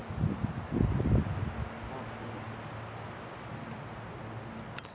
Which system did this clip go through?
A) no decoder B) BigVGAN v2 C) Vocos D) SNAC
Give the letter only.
A